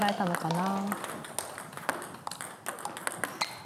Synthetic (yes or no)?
no